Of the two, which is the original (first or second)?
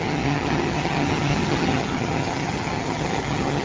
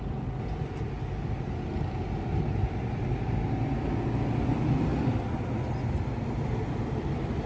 second